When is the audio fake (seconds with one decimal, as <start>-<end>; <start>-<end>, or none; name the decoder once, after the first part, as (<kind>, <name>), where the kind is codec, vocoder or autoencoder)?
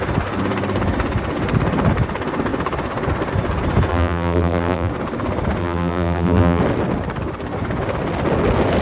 3.9-4.9 (vocoder, BigVGAN v2); 5.6-6.6